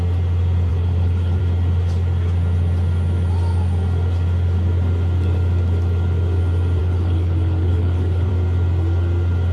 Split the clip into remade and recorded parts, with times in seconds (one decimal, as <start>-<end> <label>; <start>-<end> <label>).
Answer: 0.0-0.7 recorded; 0.7-1.4 remade; 1.4-6.8 recorded; 6.8-8.3 remade; 8.3-9.5 recorded